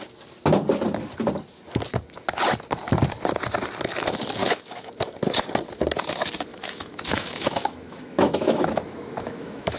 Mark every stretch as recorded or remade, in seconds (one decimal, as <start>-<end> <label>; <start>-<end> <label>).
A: 0.0-4.4 recorded; 4.4-4.9 remade; 4.9-6.5 recorded; 6.5-9.8 remade

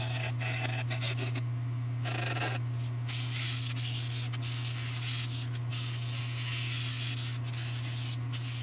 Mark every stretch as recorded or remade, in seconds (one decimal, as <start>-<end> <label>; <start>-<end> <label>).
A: 0.0-8.6 recorded

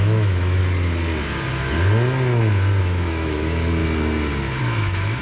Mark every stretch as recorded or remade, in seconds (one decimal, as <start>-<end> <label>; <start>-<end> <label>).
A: 0.0-0.6 remade; 0.6-2.8 recorded; 2.8-3.8 remade; 3.8-4.6 recorded; 4.6-5.2 remade

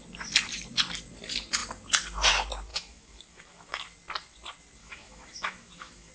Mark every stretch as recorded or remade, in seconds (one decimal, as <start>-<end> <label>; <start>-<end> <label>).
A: 0.0-2.7 recorded; 2.7-3.7 remade; 3.7-4.8 recorded; 4.8-6.1 remade

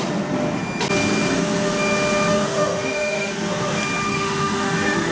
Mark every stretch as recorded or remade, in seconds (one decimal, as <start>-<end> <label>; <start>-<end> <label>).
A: 0.0-2.3 recorded; 2.3-3.3 remade; 3.3-4.1 recorded; 4.1-5.1 remade

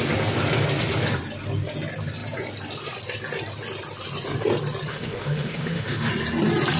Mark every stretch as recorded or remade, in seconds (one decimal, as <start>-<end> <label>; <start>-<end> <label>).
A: 0.0-4.9 recorded; 4.9-6.1 remade; 6.1-6.8 recorded

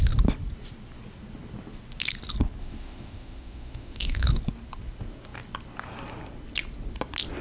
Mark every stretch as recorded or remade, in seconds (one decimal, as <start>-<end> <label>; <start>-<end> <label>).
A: 0.0-2.6 recorded; 2.6-4.3 remade; 4.3-7.4 recorded